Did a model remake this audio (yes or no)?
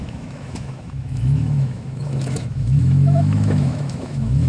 yes